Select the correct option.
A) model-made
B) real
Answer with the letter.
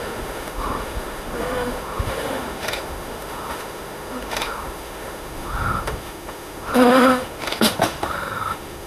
A